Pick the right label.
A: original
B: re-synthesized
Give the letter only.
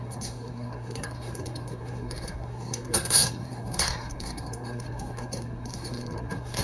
B